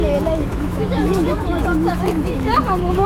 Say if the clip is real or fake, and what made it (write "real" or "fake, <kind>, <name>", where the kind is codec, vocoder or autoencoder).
fake, autoencoder, DAC-VAE